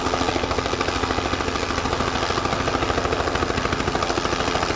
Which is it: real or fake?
real